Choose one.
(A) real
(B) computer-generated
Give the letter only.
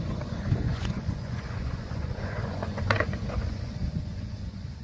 B